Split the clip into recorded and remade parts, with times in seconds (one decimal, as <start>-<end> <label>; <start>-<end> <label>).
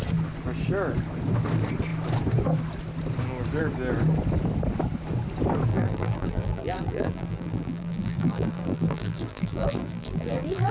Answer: 0.0-5.7 recorded; 5.7-10.7 remade